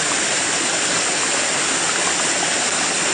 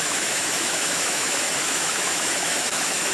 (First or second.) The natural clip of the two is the first